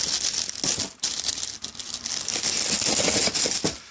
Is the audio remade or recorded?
recorded